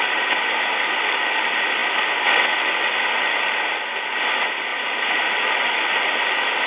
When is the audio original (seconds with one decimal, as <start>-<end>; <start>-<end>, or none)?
0.0-4.7; 5.2-6.7